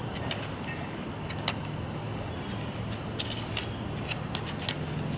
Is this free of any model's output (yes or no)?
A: yes